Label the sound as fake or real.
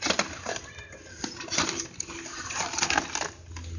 real